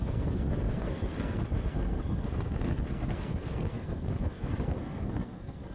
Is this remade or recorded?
remade